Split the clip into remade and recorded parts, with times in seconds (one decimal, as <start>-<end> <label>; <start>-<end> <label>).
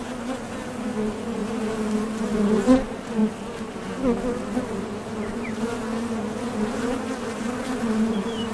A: 0.0-8.5 recorded